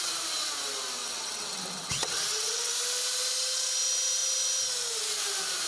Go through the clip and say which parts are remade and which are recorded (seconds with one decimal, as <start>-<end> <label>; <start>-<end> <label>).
0.0-1.0 recorded; 1.0-2.7 remade; 2.7-5.7 recorded